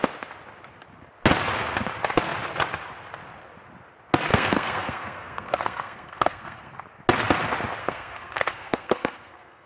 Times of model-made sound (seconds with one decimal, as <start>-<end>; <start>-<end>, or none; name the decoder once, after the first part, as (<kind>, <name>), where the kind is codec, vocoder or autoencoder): 4.3-6.7 (codec, SNAC); 7.8-9.7